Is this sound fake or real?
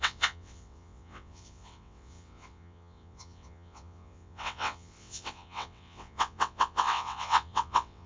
fake